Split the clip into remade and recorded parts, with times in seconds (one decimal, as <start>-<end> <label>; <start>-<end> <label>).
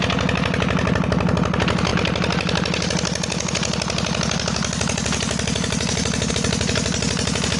0.0-7.6 recorded